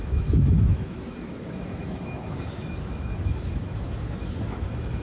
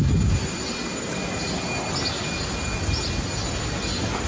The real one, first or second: second